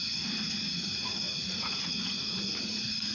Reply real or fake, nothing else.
fake